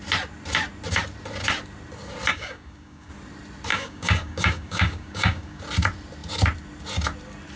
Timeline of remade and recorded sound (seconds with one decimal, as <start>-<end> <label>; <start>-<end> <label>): 0.0-2.3 recorded; 2.3-3.1 remade; 3.1-3.7 recorded; 3.7-5.6 remade; 5.6-7.6 recorded